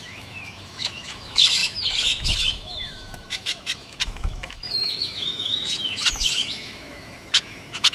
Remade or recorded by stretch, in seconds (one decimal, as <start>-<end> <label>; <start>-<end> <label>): 0.0-7.9 remade